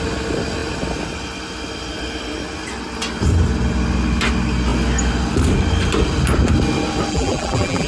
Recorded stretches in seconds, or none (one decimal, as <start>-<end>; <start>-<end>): 0.0-7.1